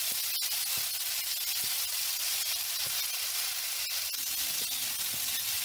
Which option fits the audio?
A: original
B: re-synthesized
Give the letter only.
A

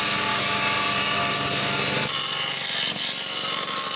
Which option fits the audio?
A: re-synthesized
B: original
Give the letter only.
B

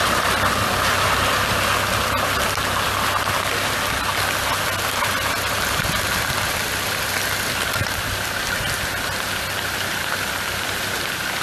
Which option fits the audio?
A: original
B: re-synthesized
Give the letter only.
A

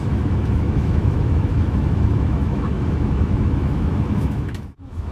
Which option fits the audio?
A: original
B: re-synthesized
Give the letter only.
B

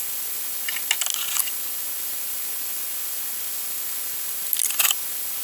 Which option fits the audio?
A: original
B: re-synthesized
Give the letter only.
A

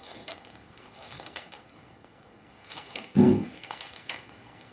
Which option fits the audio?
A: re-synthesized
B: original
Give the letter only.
A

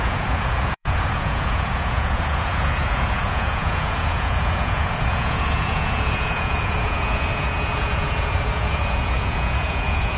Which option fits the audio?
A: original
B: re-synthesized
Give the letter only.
B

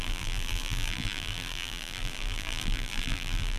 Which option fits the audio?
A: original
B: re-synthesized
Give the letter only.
B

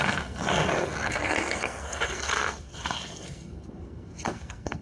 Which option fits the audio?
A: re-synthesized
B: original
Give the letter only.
A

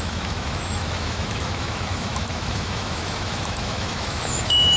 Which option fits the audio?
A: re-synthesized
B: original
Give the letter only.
A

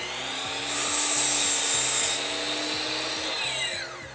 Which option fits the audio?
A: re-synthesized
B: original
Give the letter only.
B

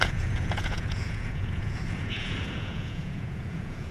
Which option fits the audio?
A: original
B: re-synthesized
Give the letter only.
B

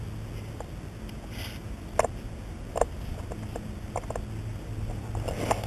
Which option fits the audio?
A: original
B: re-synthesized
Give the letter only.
A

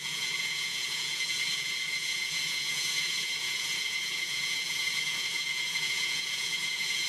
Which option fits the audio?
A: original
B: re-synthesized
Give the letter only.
B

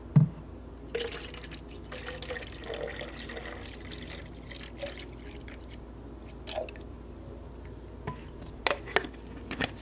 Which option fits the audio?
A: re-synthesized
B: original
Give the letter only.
B